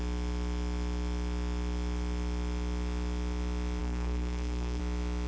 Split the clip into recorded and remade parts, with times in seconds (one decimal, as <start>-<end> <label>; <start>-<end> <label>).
0.0-3.8 recorded; 3.8-4.8 remade; 4.8-5.3 recorded